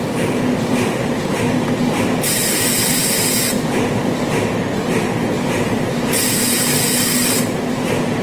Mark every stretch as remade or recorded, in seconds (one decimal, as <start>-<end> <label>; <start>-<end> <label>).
0.0-3.0 remade; 3.0-5.7 recorded; 5.7-8.2 remade